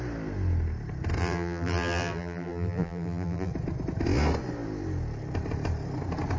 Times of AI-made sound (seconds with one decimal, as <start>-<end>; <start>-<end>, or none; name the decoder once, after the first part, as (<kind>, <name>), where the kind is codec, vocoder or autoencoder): 1.2-3.5 (vocoder, BigVGAN v2)